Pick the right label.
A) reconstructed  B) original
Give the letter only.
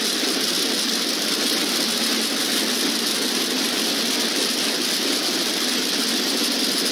B